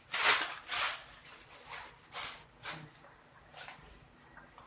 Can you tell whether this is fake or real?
real